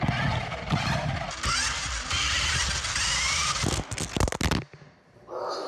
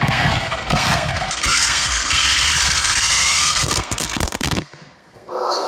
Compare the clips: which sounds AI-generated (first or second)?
second